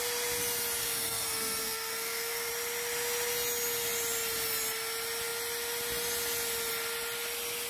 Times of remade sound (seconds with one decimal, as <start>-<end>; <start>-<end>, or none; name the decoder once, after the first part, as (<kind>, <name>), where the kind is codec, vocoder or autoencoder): 0.8-2.5 (codec, SNAC)